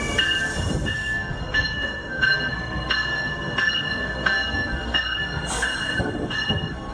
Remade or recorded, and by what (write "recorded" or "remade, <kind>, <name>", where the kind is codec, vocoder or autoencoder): remade, codec, SNAC